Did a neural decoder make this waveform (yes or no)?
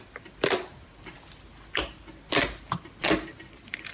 no